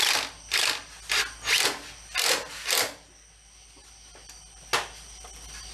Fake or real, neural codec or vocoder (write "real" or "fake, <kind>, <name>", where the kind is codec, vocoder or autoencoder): real